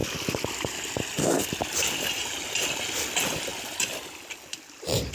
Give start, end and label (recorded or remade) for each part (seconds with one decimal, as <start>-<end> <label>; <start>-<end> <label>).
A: 0.0-3.5 recorded; 3.5-5.1 remade